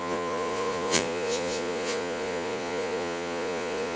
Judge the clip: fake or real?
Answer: fake